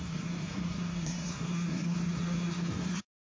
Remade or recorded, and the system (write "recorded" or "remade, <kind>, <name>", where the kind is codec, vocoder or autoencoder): remade, codec, SNAC